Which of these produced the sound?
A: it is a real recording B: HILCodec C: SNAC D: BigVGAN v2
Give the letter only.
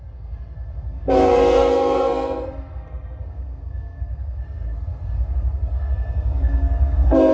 C